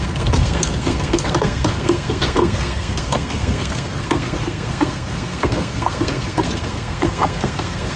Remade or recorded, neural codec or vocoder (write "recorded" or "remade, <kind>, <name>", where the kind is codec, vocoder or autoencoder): remade, codec, SNAC